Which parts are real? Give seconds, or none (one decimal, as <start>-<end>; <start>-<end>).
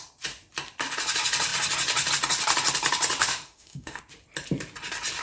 0.0-3.2; 4.0-5.2